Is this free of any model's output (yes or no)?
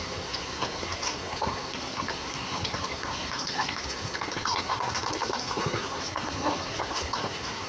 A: no